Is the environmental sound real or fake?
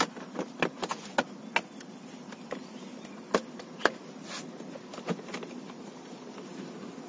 real